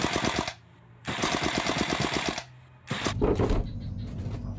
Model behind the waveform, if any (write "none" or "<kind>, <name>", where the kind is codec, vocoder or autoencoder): none